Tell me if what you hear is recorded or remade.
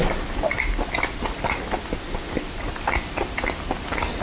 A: recorded